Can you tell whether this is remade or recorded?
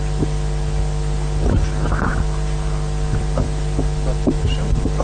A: recorded